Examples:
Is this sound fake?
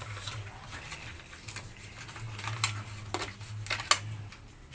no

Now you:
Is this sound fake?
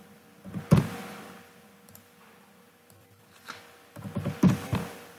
no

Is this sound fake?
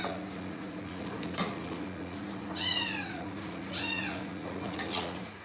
yes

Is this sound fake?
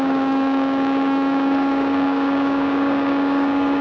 yes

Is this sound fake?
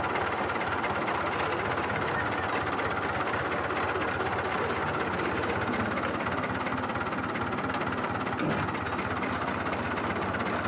no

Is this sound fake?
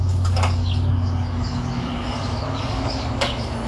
yes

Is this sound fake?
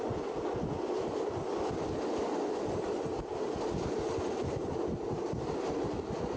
no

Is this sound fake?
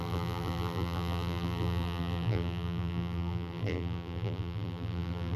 yes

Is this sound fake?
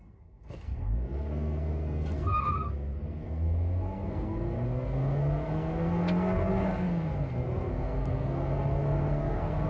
yes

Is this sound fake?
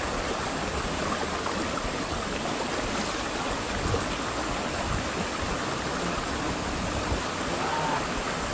no